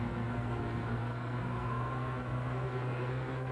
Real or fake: fake